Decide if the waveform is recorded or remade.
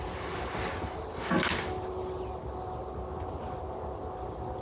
recorded